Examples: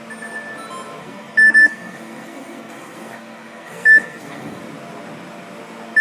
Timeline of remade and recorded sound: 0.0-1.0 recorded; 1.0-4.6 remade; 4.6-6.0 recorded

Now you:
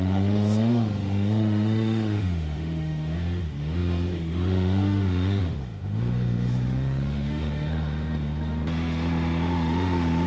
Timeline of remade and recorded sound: 0.0-10.3 remade

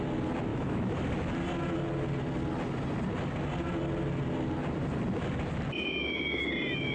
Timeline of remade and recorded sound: 0.0-0.5 recorded; 0.5-1.0 remade; 1.0-6.9 recorded

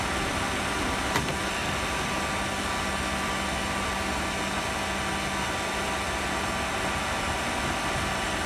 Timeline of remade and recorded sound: 0.0-8.5 recorded

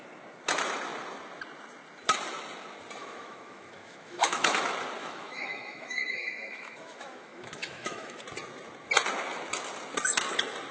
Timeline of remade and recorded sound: 0.0-3.0 recorded; 3.0-4.6 remade; 4.6-5.0 recorded; 5.0-8.2 remade; 8.2-10.7 recorded

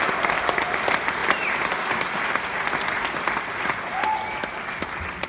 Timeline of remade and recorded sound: 0.0-1.2 recorded; 1.2-2.2 remade; 2.2-5.3 recorded